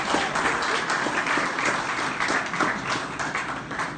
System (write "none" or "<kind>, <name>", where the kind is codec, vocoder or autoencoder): none